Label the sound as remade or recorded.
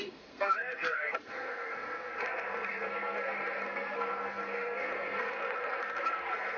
remade